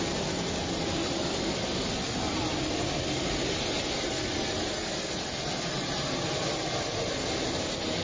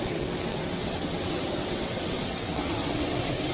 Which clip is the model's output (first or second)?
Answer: second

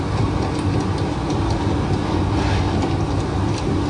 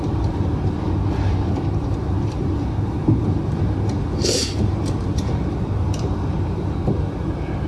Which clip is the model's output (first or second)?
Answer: second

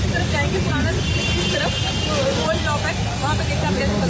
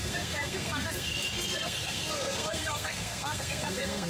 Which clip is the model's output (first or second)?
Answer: second